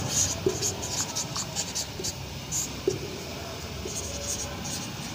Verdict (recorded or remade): recorded